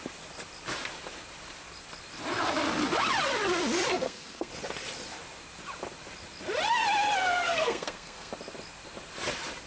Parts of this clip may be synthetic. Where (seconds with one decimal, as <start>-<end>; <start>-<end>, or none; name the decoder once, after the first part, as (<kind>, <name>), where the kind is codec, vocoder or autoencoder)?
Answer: 3.9-4.5 (codec, SNAC); 7.2-8.3